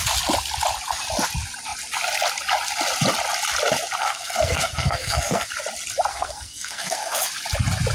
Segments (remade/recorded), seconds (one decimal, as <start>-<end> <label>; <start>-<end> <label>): 0.0-4.0 recorded; 4.0-5.5 remade; 5.5-6.1 recorded; 6.1-7.3 remade; 7.3-7.9 recorded